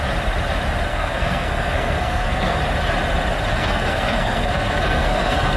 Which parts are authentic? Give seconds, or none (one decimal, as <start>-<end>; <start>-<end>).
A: 0.0-0.9; 2.6-3.5